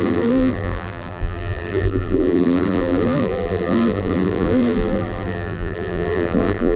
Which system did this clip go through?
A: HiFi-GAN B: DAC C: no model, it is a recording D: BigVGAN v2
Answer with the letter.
D